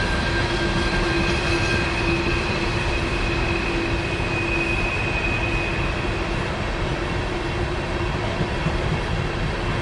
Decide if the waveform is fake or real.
real